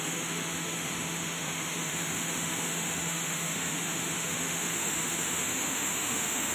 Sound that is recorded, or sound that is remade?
remade